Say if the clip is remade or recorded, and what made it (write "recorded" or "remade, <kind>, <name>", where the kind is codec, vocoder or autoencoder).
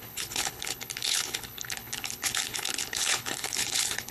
remade, codec, HILCodec